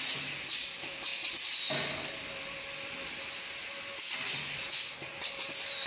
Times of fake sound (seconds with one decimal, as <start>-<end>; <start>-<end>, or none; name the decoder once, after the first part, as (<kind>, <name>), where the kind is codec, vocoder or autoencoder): 4.4-4.9 (autoencoder, DAC-VAE)